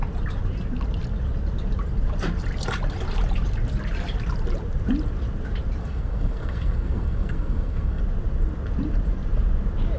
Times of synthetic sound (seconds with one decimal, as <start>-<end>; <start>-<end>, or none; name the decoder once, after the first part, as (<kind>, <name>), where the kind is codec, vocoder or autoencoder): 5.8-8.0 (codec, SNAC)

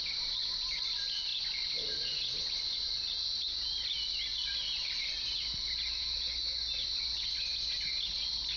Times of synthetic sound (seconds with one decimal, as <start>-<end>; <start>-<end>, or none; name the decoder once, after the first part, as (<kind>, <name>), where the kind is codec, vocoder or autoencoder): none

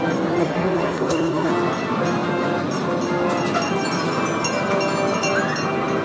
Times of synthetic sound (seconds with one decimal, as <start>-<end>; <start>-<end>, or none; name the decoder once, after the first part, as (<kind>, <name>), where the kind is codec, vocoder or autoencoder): 0.4-1.5 (codec, SNAC)

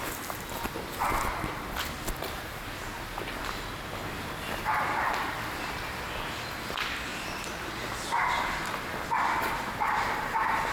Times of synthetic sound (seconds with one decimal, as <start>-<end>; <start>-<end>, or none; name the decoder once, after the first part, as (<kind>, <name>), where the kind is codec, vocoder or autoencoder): none

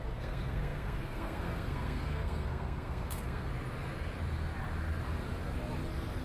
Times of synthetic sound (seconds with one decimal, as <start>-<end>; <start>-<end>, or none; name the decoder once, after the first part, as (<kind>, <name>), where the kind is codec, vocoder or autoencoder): 0.0-3.5 (codec, SNAC)

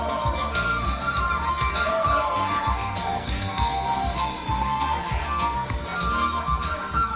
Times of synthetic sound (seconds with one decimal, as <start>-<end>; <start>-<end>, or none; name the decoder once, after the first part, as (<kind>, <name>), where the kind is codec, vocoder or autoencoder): 0.0-1.0 (codec, SNAC); 1.5-7.2